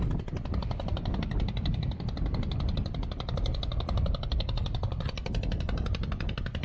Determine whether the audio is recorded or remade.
recorded